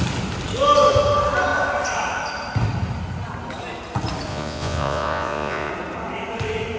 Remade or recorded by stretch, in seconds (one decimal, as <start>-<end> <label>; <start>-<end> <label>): 0.0-4.3 recorded; 4.3-5.7 remade; 5.7-6.8 recorded